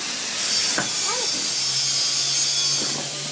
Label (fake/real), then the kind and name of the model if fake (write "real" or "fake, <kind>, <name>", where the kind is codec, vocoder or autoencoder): real